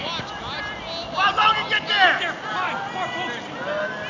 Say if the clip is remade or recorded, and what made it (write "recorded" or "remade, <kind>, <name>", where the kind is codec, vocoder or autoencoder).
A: recorded